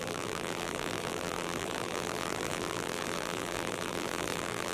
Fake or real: fake